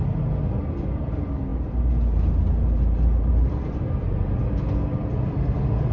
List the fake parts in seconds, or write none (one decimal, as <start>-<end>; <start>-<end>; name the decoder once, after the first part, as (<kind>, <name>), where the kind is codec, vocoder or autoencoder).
none

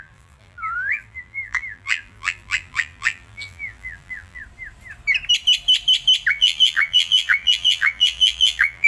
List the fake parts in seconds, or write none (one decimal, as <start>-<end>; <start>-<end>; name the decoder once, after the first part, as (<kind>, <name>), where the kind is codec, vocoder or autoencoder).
0.0-4.4 (vocoder, BigVGAN v2); 6.3-8.9

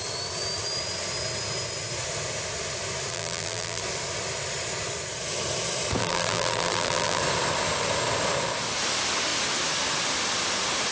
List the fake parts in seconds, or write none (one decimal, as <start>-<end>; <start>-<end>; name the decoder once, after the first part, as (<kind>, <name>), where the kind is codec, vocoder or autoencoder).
3.1-3.8 (vocoder, BigVGAN v2); 6.0-7.2

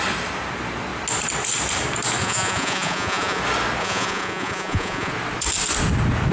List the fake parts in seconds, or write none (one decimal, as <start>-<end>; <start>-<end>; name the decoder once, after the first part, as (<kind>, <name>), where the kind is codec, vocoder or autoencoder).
2.2-3.4 (vocoder, Vocos); 3.8-5.1

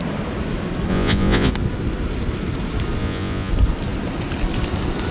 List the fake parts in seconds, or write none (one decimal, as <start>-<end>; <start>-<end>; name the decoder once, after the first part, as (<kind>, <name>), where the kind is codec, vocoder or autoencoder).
0.9-1.5 (vocoder, Vocos); 3.0-3.5

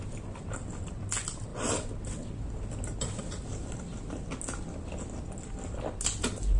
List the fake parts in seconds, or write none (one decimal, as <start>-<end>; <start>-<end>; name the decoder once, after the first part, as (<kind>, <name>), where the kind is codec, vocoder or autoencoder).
none

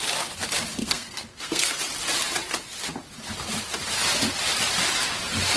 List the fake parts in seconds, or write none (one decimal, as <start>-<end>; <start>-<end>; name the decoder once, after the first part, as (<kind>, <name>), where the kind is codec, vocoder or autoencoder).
0.8-1.8 (codec, SNAC)

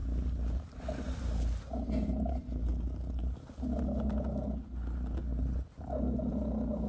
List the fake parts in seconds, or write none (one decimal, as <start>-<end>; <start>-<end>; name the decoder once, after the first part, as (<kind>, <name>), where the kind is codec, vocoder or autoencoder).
none